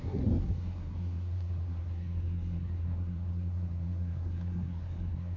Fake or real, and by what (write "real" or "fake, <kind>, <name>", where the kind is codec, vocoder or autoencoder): fake, codec, SNAC